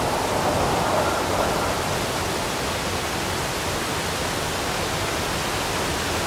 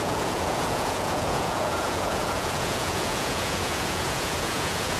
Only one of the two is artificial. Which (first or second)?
second